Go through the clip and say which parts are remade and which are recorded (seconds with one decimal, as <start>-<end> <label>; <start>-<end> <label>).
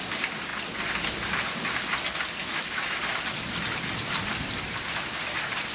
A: 0.0-2.4 recorded; 2.4-3.0 remade; 3.0-5.7 recorded